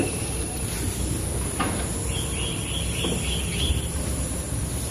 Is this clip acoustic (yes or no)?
yes